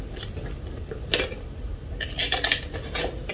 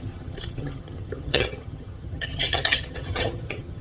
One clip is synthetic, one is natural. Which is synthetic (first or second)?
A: second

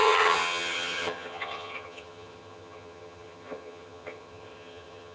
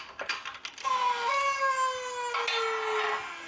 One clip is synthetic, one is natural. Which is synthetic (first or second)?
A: first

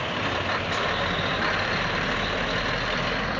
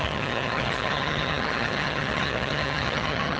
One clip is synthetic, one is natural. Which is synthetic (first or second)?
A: second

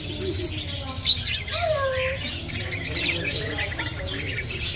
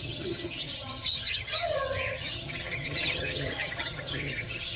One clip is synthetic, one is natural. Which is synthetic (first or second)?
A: second